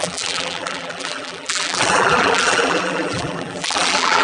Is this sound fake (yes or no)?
yes